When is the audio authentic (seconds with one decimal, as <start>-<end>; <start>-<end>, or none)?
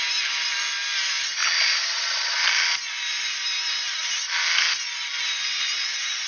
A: 0.0-6.3